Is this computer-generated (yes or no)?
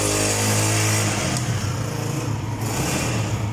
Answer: no